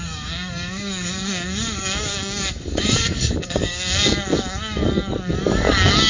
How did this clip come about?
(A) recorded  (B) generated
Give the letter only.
B